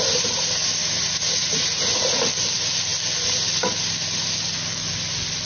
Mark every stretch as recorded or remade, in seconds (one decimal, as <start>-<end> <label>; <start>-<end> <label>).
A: 0.0-0.8 recorded; 0.8-2.2 remade; 2.2-5.5 recorded